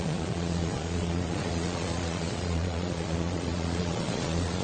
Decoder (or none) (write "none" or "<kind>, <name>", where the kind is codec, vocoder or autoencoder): vocoder, Vocos